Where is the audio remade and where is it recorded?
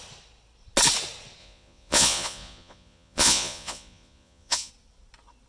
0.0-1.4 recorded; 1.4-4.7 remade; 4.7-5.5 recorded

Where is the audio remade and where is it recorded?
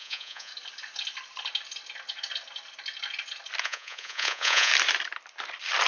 0.0-0.5 remade; 0.5-3.6 recorded; 3.6-4.7 remade; 4.7-5.9 recorded